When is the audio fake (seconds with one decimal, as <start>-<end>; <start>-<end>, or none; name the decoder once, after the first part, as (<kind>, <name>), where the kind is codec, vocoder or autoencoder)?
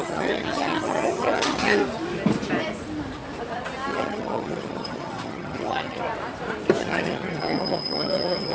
0.0-1.8 (vocoder, HiFi-GAN); 3.9-6.0; 6.8-8.5